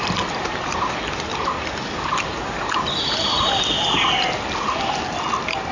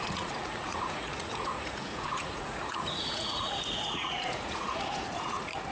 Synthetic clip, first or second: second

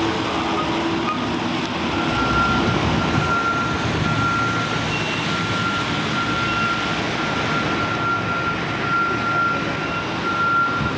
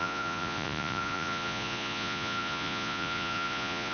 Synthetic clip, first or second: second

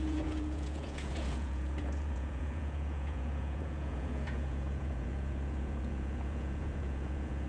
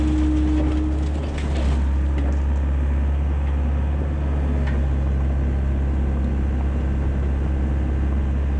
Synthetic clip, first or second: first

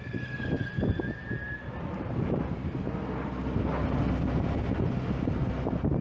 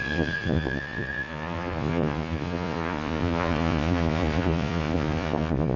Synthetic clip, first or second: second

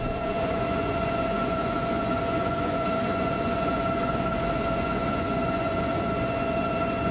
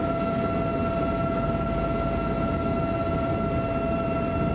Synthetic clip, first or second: first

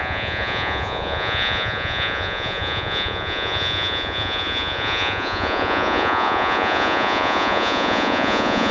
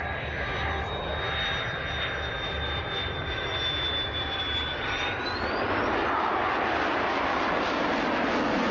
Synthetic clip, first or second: first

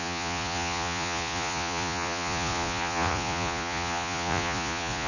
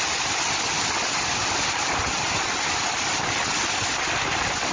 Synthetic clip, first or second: first